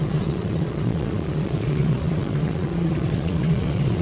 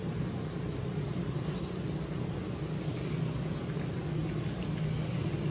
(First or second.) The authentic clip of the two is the second